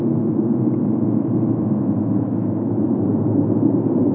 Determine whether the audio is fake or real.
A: real